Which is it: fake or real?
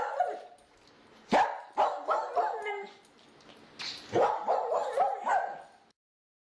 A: real